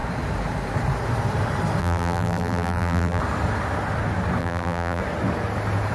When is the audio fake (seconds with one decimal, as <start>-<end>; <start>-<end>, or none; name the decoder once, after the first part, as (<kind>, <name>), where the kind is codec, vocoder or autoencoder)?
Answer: 1.8-3.2 (vocoder, BigVGAN v2); 4.4-5.0